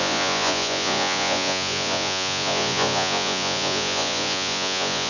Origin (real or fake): fake